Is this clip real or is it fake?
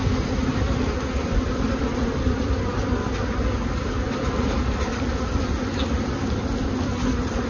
real